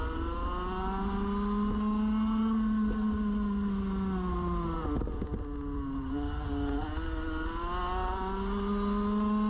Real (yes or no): yes